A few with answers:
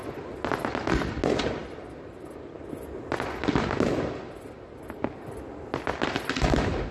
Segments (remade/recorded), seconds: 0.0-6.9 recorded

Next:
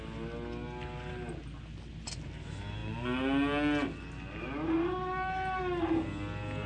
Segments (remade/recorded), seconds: 0.0-6.7 recorded

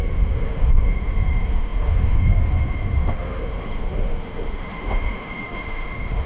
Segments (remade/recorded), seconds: 0.0-6.3 remade

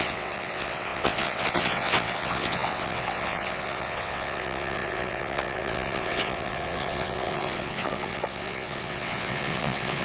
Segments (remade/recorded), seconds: 0.0-10.0 remade